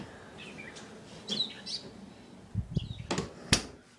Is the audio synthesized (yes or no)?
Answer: no